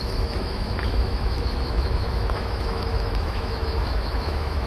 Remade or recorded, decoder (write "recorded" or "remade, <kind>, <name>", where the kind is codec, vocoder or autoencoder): remade, autoencoder, DAC-VAE